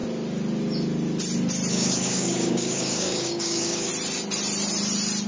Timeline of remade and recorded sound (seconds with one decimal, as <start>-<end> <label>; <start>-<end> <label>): 0.0-1.7 recorded; 1.7-3.9 remade; 3.9-5.3 recorded